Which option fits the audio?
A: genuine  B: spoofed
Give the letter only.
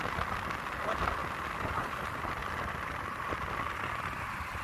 A